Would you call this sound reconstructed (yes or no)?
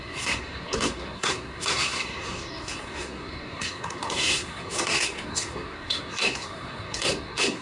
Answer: yes